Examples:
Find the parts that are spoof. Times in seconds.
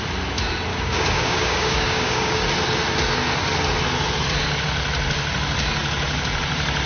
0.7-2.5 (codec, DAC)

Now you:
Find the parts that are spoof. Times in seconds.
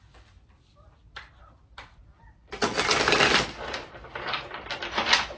none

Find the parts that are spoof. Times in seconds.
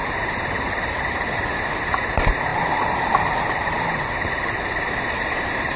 none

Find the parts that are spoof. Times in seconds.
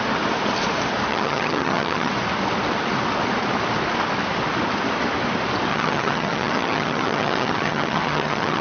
1.1-2.1 (vocoder, HiFi-GAN); 5.7-8.6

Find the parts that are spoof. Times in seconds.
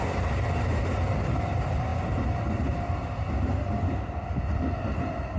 none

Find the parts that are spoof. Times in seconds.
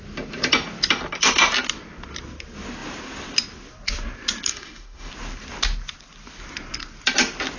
4.5-5.1 (autoencoder, DAC-VAE)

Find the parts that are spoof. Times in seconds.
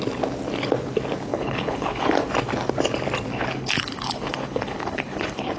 1.3-2.2 (codec, HILCodec); 3.3-5.6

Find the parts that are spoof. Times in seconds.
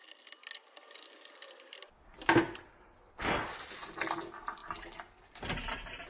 none